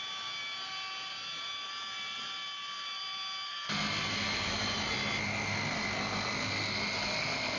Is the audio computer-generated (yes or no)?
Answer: no